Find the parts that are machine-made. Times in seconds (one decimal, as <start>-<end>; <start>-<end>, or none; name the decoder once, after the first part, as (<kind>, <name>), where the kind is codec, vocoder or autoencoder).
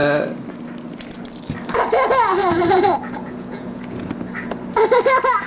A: 2.4-4.1 (vocoder, Vocos)